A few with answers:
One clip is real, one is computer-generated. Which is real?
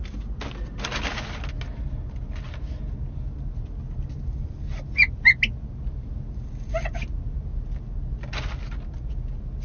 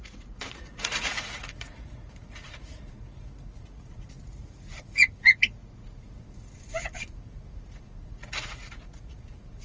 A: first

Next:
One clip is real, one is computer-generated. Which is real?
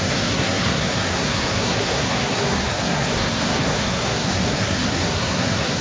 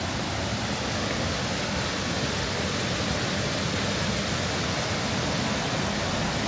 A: second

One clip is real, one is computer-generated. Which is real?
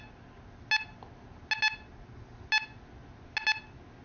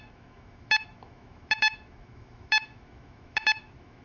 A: first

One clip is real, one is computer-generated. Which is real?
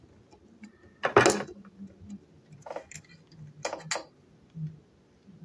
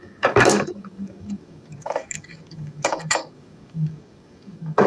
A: first